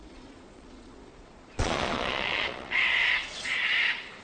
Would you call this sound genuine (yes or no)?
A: no